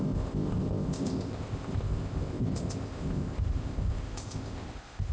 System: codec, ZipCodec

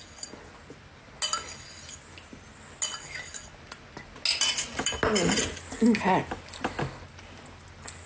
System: none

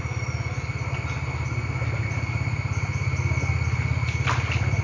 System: none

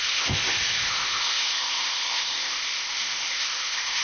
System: codec, ZipCodec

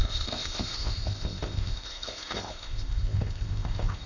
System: codec, ZipCodec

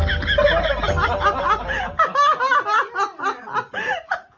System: none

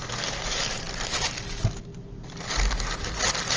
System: none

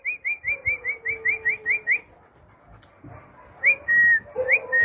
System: none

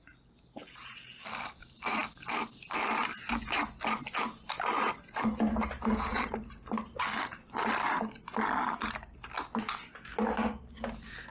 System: none